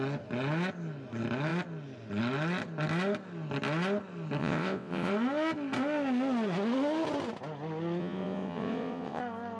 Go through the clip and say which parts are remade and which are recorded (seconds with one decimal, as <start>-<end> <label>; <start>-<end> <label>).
0.0-4.4 recorded; 4.4-5.1 remade; 5.1-8.0 recorded; 8.0-9.2 remade; 9.2-9.6 recorded